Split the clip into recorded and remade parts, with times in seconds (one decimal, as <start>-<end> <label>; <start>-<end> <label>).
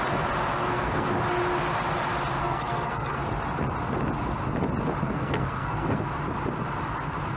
0.0-0.5 recorded; 0.5-1.1 remade; 1.1-2.4 recorded; 2.4-3.2 remade; 3.2-5.0 recorded; 5.0-6.0 remade; 6.0-7.4 recorded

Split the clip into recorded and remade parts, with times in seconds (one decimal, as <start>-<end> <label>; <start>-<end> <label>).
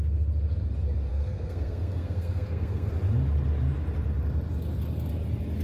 0.0-1.1 recorded; 1.1-2.9 remade; 2.9-5.6 recorded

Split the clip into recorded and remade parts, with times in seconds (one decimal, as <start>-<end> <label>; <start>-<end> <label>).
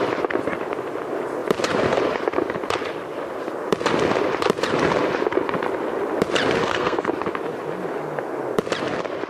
0.0-6.6 recorded; 6.6-7.1 remade; 7.1-9.3 recorded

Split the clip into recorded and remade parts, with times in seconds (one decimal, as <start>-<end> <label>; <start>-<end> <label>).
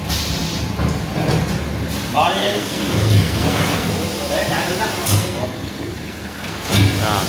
0.0-2.4 recorded; 2.4-3.9 remade; 3.9-5.0 recorded; 5.0-6.7 remade; 6.7-7.3 recorded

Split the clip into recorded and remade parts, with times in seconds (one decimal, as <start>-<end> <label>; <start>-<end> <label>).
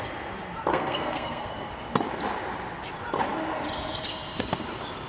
0.0-0.7 recorded; 0.7-1.7 remade; 1.7-5.1 recorded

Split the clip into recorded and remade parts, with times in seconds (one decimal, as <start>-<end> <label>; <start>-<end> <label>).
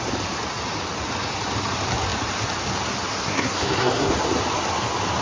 0.0-3.2 recorded; 3.2-4.1 remade; 4.1-5.2 recorded